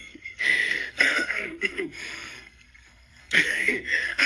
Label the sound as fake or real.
fake